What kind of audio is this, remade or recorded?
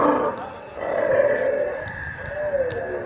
recorded